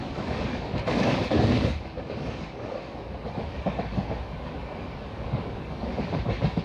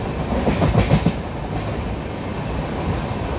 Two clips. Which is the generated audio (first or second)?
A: first